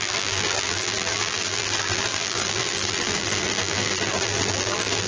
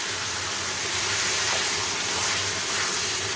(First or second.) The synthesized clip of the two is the first